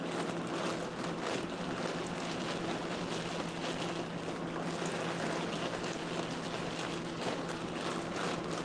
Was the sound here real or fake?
real